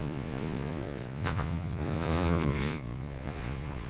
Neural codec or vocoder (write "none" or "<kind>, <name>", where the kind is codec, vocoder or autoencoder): vocoder, Vocos